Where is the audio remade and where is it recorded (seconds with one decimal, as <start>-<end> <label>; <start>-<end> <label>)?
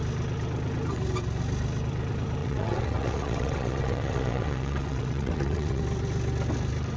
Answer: 0.0-2.4 recorded; 2.4-5.8 remade; 5.8-7.0 recorded